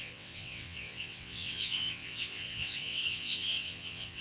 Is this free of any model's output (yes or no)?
no